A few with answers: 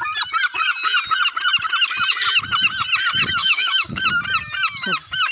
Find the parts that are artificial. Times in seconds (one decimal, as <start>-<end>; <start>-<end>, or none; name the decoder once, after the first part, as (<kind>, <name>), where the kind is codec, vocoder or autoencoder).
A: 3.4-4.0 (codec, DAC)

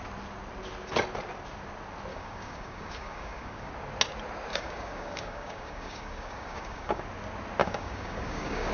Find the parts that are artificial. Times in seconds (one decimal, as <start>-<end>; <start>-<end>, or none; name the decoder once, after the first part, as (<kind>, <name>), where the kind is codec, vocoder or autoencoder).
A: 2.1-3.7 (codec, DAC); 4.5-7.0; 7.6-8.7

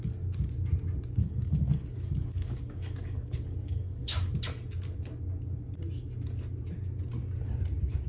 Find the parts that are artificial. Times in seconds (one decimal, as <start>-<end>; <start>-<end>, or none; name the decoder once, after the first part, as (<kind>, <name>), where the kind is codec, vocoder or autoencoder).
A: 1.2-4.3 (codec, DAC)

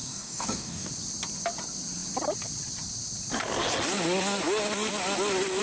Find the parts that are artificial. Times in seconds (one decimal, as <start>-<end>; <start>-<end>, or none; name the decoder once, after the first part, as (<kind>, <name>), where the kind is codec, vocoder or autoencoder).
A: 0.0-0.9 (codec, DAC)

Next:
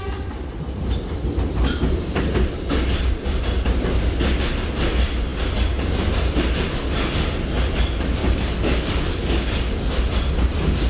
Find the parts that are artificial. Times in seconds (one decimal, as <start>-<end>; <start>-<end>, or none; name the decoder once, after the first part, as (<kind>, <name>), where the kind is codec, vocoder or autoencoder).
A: 8.2-9.6 (codec, DAC)

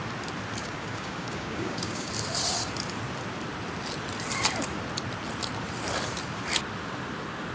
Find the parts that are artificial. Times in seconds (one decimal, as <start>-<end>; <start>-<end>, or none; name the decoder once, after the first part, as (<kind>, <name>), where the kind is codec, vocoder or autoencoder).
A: 0.6-2.1 (codec, DAC)

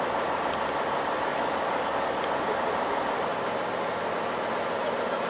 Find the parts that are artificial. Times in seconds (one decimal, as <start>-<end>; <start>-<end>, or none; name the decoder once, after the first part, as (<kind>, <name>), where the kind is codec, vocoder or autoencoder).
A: 1.3-2.2 (codec, DAC)